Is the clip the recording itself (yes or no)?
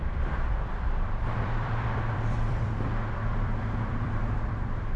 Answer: no